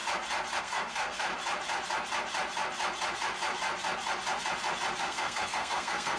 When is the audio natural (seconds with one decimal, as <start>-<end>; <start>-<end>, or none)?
0.0-0.6; 1.3-5.0